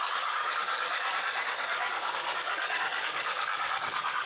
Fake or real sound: fake